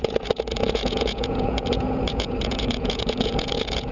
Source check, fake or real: fake